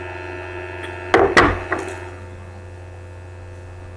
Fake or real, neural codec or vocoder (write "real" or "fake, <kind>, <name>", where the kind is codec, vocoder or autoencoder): real